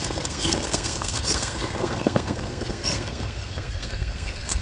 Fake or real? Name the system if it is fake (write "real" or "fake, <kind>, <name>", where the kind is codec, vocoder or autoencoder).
fake, codec, SNAC